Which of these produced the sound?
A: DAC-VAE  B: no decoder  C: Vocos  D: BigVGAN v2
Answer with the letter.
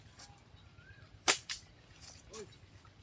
D